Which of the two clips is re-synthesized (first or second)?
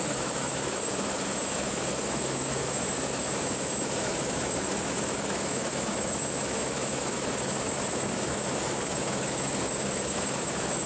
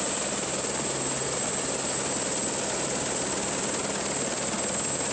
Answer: first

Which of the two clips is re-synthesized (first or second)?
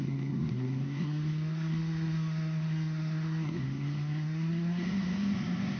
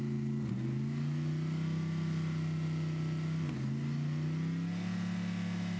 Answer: first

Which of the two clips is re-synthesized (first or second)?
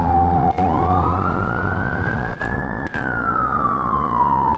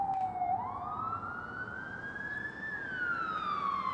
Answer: first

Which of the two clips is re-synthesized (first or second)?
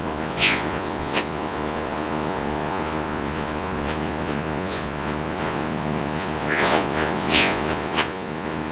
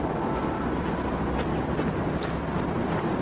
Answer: first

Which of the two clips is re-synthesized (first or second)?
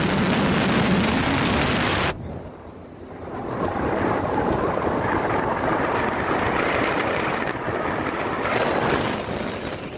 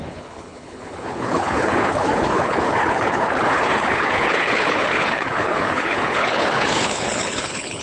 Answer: second